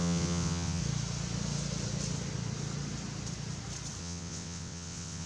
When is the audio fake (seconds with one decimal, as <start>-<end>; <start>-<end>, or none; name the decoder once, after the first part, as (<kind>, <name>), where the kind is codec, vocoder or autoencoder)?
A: 0.0-0.8 (vocoder, WaveNeXt); 4.0-5.3